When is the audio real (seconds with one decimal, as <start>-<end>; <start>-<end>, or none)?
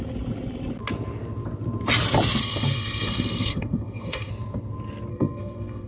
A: 0.0-2.4; 4.3-5.1